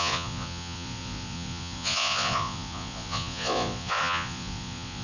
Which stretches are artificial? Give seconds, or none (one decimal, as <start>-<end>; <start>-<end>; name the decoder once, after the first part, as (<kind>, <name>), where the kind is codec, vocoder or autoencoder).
0.0-5.0 (vocoder, Vocos)